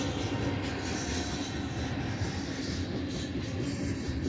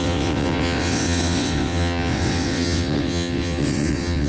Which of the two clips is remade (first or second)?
second